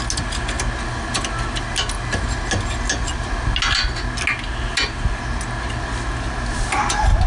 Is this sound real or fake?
real